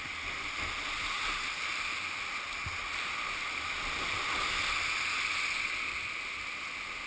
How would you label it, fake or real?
real